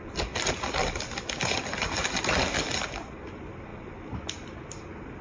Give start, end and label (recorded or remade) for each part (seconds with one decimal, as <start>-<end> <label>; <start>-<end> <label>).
0.0-5.2 recorded